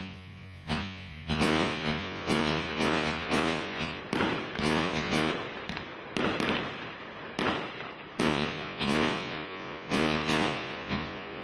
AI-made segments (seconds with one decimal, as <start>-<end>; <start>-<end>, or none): 0.0-4.0; 4.6-5.3; 8.2-11.4